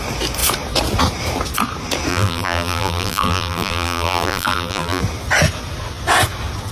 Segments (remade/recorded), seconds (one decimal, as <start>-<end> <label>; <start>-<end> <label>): 0.0-2.1 recorded; 2.1-5.0 remade; 5.0-6.7 recorded

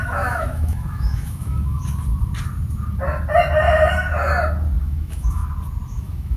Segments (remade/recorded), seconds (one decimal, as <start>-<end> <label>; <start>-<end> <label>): 0.0-1.8 remade; 1.8-4.8 recorded; 4.8-5.4 remade; 5.4-5.9 recorded; 5.9-6.4 remade